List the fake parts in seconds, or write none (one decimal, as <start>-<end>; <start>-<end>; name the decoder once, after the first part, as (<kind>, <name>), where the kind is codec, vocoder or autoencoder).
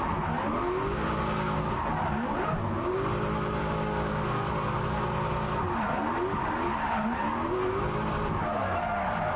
1.2-1.7 (codec, DAC); 3.6-4.5